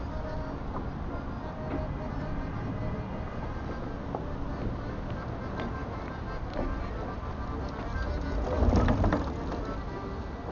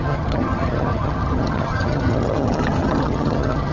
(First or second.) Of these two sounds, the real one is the first